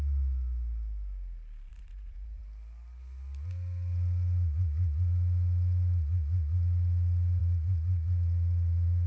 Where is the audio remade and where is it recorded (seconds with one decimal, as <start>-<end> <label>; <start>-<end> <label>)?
0.0-1.7 recorded; 1.7-2.4 remade; 2.4-7.4 recorded; 7.4-9.1 remade